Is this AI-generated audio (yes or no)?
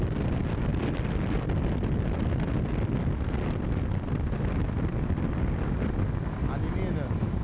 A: no